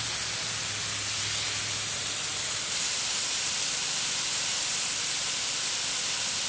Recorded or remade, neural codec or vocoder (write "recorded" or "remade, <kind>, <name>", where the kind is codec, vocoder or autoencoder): recorded